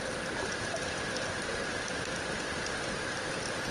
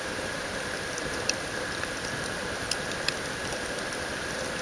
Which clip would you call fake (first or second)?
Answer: second